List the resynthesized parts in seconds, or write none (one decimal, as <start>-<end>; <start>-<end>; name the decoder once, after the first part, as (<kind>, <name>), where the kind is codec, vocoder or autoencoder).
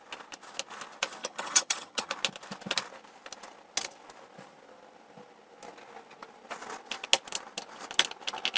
1.2-2.1 (vocoder, HiFi-GAN)